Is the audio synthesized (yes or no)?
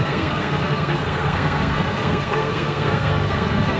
yes